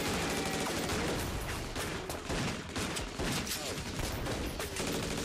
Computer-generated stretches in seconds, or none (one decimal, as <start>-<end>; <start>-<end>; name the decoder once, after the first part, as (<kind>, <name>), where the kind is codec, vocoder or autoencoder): none